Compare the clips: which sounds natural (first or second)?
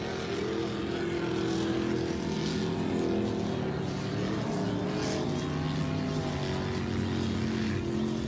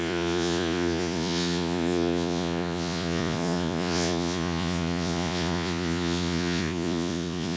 first